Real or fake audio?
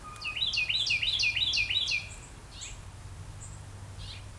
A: real